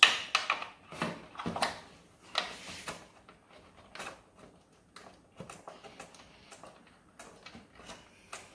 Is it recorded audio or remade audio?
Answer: recorded